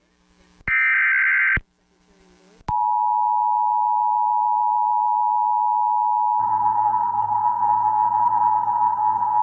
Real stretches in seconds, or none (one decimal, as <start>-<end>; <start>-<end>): 0.0-6.4